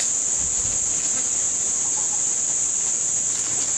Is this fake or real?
real